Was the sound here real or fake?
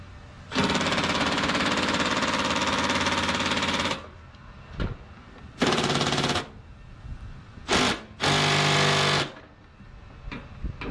real